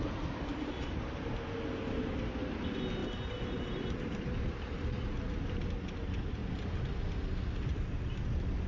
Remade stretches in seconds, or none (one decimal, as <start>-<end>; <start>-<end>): 0.5-1.0; 3.0-5.2; 6.4-7.0